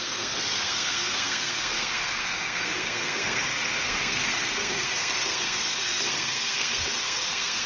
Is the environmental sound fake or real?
fake